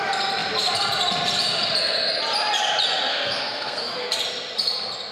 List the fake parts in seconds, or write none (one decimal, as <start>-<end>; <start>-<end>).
3.1-4.1